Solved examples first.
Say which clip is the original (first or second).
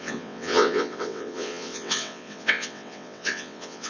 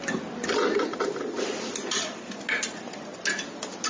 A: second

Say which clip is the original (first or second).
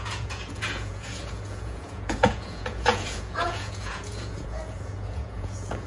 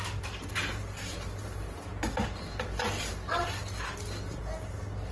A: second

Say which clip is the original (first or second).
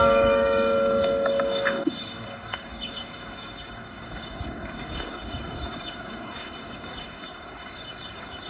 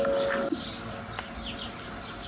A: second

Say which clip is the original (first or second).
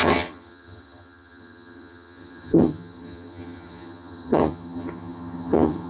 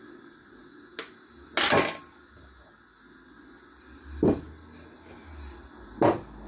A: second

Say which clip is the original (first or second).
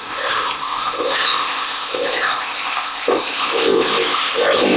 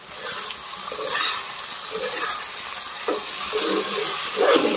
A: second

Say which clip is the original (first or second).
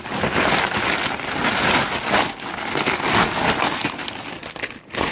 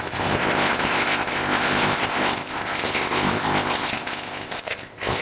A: first